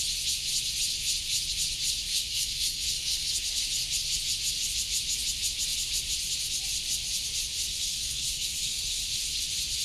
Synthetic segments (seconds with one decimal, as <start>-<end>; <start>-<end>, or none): 2.1-3.7; 7.7-9.0